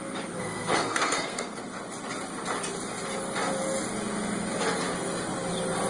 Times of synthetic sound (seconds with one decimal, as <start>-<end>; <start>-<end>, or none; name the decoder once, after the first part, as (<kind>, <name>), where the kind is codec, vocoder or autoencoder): 0.4-1.6 (codec, SNAC)